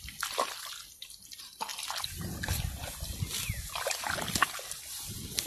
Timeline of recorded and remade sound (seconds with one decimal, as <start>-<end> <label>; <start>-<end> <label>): 0.0-5.5 recorded

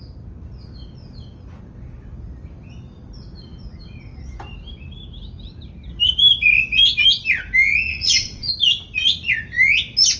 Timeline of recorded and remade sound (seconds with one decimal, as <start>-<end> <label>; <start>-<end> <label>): 0.0-7.9 recorded; 7.9-8.5 remade; 8.5-10.2 recorded